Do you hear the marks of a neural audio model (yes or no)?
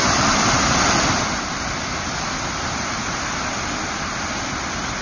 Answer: no